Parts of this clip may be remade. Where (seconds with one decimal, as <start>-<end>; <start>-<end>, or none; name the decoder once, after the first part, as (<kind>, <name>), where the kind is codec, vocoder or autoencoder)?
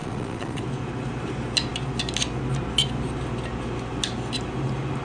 0.0-0.6 (vocoder, Vocos)